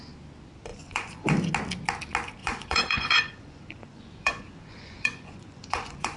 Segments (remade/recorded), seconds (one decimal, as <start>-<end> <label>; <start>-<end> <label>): 0.0-0.7 recorded; 0.7-1.5 remade; 1.5-2.4 recorded; 2.4-6.2 remade